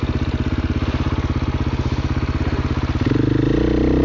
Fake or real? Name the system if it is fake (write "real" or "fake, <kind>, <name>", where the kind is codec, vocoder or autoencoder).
real